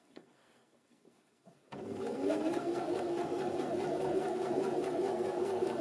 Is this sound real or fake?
fake